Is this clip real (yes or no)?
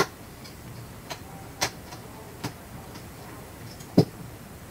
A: no